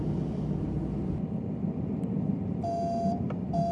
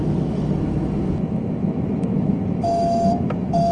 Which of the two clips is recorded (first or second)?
first